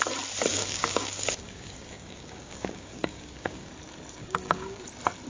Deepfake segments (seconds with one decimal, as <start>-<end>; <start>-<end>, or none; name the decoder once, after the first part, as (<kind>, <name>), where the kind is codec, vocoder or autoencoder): 0.5-3.7 (codec, DAC); 4.2-4.8